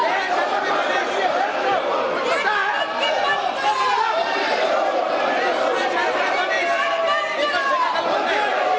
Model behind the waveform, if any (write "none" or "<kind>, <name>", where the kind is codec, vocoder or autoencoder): vocoder, BigVGAN v2